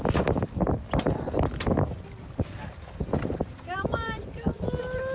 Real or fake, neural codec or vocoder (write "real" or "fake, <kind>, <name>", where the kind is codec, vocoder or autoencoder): real